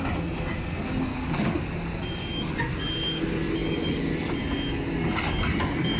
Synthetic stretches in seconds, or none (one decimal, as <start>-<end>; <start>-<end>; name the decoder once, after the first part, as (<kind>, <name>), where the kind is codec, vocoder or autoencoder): 1.1-2.0 (codec, DAC)